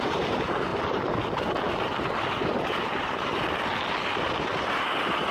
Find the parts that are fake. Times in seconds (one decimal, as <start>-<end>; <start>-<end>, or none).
4.5-5.3